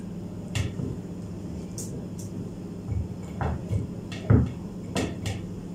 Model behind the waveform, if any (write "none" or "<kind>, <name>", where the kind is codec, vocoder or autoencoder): vocoder, BigVGAN v2